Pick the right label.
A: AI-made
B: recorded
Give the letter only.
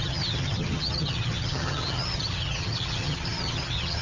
A